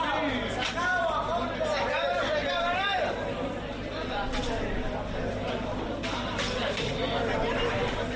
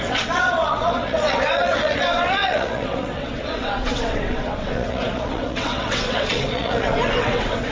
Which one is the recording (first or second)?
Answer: first